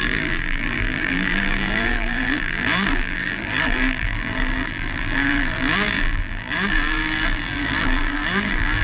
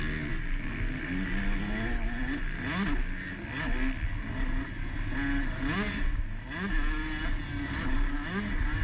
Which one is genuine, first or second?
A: second